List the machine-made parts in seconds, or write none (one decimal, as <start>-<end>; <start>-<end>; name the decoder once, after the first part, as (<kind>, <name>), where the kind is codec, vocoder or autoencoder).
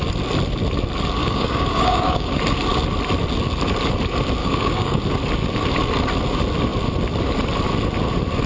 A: 1.2-2.3 (codec, DAC); 4.4-5.0